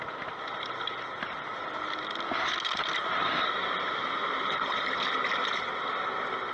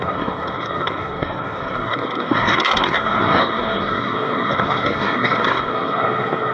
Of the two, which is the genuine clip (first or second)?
first